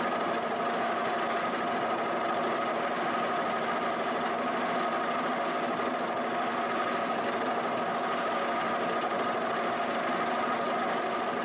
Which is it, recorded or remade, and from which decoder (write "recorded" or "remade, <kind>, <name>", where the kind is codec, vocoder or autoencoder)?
recorded